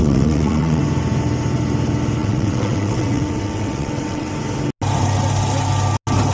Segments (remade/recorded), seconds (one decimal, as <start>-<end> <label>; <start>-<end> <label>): 0.0-0.8 remade; 0.8-2.2 recorded; 2.2-4.3 remade; 4.3-6.3 recorded